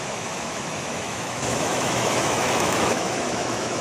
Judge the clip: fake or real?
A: fake